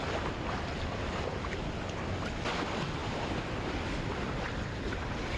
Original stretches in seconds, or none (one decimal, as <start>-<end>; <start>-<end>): 0.0-5.4